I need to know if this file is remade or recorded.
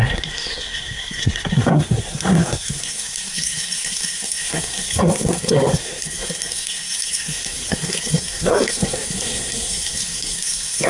remade